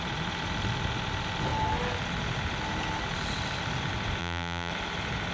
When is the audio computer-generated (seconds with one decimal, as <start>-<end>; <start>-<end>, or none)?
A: 4.2-4.7